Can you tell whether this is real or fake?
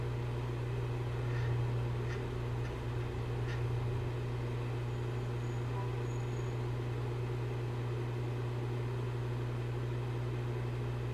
real